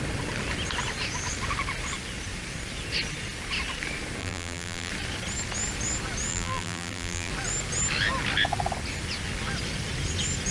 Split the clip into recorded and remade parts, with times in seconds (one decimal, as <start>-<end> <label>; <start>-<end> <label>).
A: 0.0-4.2 recorded; 4.2-4.9 remade; 4.9-6.3 recorded; 6.3-7.3 remade; 7.3-10.5 recorded